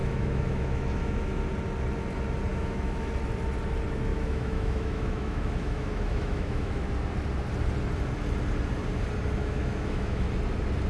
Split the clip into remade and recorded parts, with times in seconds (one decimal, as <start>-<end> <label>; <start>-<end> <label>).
0.0-1.4 remade; 1.4-2.5 recorded; 2.5-3.1 remade; 3.1-4.1 recorded; 4.1-6.9 remade; 6.9-9.4 recorded; 9.4-10.3 remade; 10.3-10.9 recorded